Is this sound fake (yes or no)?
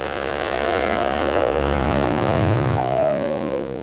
yes